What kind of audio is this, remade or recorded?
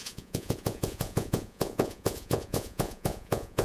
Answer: remade